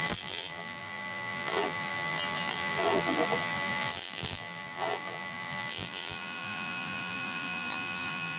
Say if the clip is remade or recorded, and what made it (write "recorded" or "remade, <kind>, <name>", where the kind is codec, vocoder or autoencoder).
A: remade, vocoder, BigVGAN v2